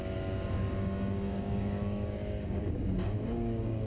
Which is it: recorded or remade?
remade